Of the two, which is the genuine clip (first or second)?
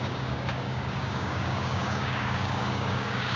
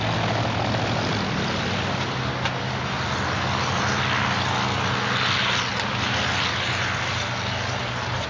second